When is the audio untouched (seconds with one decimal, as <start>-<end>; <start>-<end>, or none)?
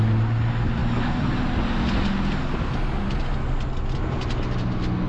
0.0-5.1